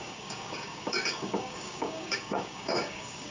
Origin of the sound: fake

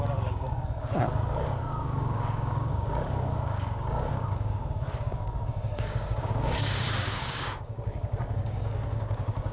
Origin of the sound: fake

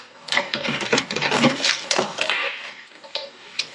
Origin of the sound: fake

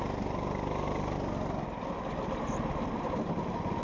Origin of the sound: real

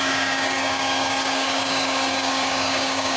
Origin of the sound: fake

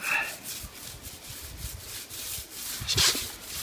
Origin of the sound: real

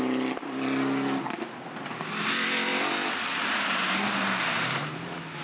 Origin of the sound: real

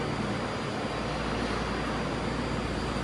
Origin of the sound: real